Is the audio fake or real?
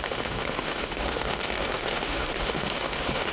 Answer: fake